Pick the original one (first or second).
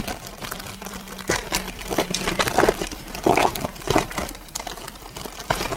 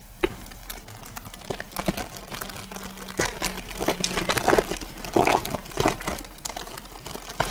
second